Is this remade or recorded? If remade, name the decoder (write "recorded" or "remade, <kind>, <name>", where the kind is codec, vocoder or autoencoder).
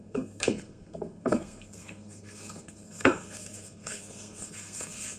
remade, codec, SNAC